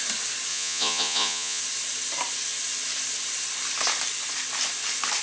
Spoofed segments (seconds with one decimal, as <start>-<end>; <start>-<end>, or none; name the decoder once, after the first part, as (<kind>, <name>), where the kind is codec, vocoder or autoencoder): 0.5-1.6 (vocoder, Vocos)